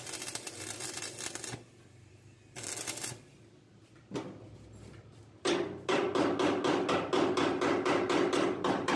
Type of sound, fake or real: real